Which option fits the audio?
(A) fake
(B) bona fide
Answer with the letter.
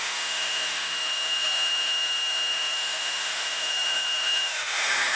A